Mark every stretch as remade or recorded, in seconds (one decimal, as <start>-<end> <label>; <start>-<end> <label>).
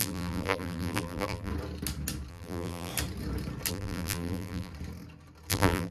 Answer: 0.0-1.5 remade; 1.5-2.3 recorded; 2.3-2.9 remade; 2.9-3.7 recorded; 3.7-4.7 remade; 4.7-5.5 recorded; 5.5-5.9 remade